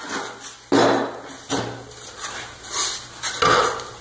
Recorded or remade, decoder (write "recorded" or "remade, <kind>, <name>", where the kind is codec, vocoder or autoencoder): recorded